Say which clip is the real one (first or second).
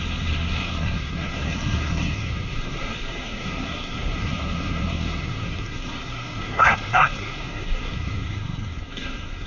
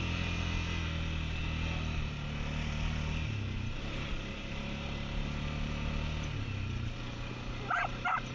second